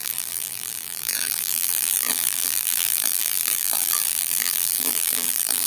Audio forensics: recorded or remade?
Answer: remade